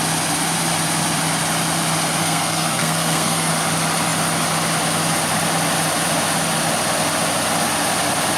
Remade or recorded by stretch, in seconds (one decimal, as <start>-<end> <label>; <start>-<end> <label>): 0.0-2.2 recorded; 2.2-3.5 remade; 3.5-8.4 recorded